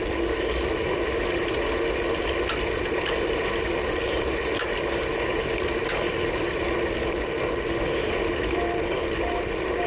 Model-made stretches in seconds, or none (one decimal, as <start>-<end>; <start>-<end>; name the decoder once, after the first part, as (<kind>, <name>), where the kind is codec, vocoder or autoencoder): 3.8-4.7 (vocoder, BigVGAN v2)